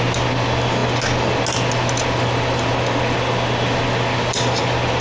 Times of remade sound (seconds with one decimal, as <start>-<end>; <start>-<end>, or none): none